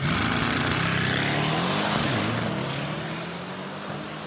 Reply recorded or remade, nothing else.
recorded